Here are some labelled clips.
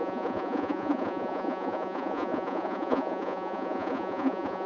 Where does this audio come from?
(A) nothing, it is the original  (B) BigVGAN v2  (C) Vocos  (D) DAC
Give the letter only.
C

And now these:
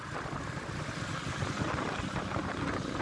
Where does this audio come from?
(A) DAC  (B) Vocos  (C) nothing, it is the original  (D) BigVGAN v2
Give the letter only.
C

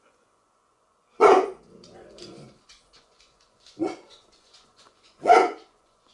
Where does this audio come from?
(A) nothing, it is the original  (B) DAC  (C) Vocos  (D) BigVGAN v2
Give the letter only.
C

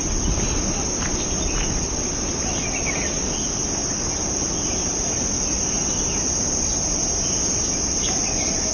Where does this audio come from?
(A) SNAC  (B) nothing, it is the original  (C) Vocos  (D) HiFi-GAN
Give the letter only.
B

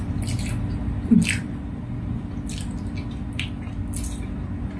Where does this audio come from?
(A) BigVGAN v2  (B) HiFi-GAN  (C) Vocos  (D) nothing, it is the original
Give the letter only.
D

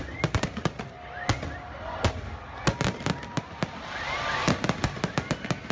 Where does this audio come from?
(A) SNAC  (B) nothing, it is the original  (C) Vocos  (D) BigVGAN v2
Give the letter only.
B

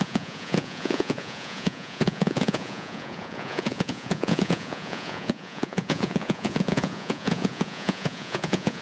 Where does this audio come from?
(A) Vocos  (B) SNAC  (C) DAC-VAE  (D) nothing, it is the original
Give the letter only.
A